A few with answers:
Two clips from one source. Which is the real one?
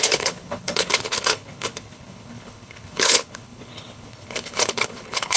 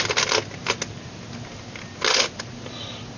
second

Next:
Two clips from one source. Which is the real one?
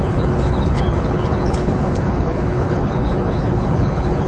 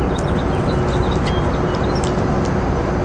second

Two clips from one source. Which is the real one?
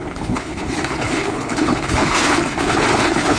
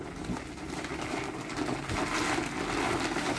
second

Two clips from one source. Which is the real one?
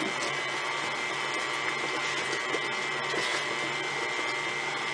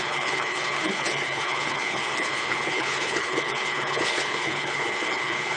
first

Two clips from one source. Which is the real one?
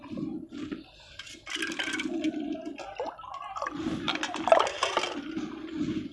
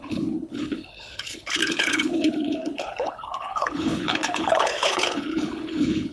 first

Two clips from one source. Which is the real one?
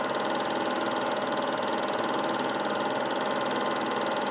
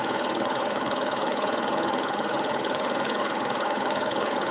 first